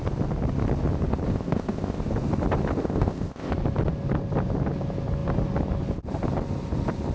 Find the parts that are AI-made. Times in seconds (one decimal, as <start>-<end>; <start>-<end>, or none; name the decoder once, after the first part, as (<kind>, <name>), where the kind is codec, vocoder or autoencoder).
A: 1.3-2.0 (codec, ZipCodec); 2.8-3.5